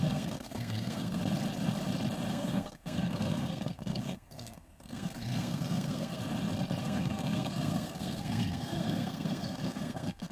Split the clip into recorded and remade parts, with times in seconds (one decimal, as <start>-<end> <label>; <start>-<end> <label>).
0.0-1.2 remade; 1.2-2.3 recorded; 2.3-6.2 remade; 6.2-6.8 recorded; 6.8-10.3 remade